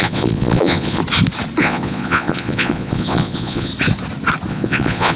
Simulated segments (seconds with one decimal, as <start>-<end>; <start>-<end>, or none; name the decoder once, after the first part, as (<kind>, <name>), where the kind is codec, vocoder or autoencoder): 0.0-1.0 (vocoder, Vocos); 1.6-3.7; 4.5-5.2

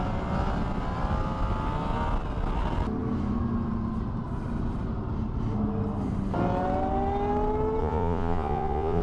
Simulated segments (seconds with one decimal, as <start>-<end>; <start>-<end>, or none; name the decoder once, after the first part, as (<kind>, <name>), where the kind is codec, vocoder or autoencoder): 7.8-9.0 (vocoder, Vocos)

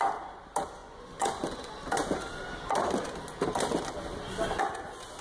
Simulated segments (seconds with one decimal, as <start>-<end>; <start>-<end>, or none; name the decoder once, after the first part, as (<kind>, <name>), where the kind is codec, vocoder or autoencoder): 0.8-1.8 (vocoder, Vocos)

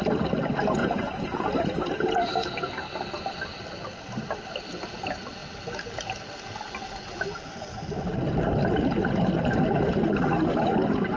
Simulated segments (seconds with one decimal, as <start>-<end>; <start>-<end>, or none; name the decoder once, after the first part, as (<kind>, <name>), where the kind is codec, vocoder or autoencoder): 0.8-1.5 (vocoder, Vocos)